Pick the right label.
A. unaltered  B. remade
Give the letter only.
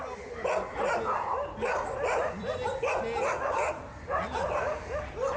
A